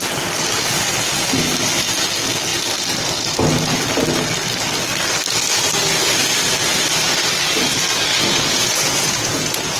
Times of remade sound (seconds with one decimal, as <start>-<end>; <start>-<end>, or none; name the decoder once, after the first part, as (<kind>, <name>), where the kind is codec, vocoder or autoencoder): 8.1-9.8 (vocoder, Vocos)